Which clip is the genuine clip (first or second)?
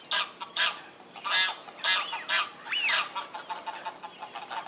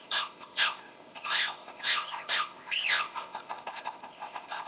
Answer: first